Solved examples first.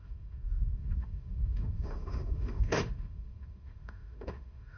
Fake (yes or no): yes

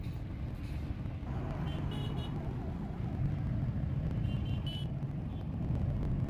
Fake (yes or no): no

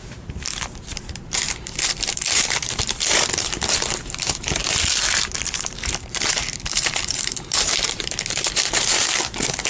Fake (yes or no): yes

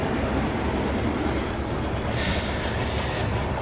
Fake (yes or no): no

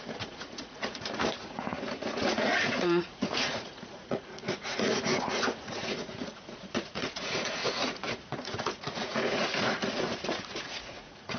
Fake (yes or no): yes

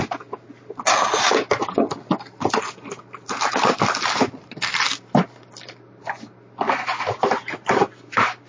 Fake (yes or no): no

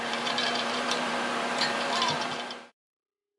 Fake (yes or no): yes